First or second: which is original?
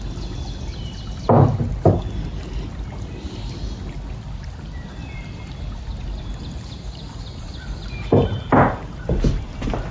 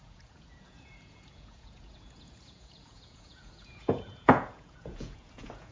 first